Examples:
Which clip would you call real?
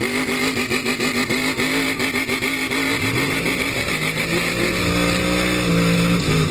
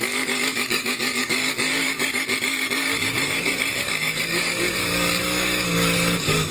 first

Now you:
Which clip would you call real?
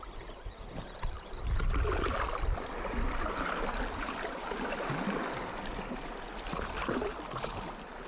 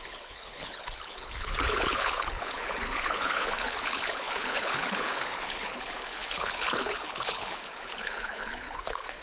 first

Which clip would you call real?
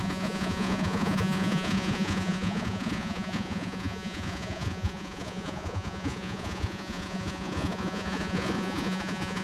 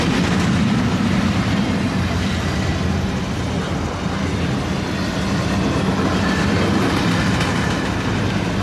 second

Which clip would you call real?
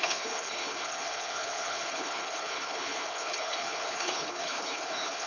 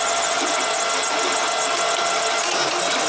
second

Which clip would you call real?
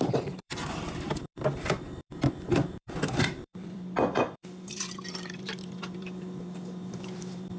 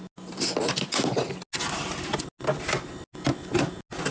second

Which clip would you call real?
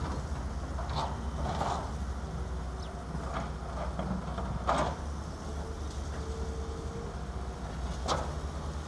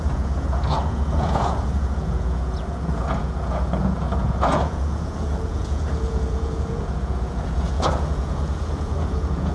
first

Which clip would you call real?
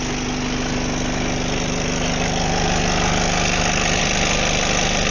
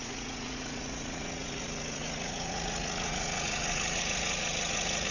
first